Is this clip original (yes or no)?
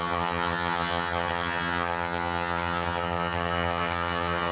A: no